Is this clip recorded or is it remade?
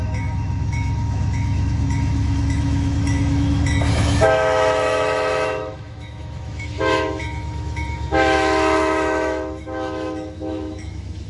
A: remade